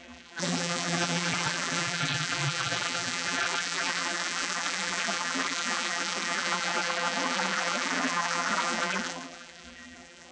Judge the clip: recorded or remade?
remade